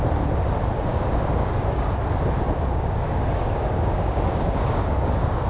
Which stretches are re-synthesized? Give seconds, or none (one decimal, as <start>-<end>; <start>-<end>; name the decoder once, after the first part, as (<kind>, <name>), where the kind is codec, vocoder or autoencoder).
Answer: 0.9-1.9 (codec, DAC); 2.7-5.5